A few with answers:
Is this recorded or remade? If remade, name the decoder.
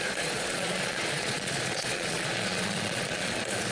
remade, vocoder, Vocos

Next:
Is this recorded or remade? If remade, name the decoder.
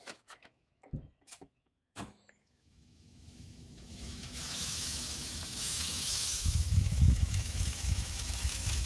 remade, autoencoder, DAC-VAE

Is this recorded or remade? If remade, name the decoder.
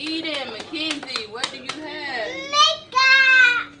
recorded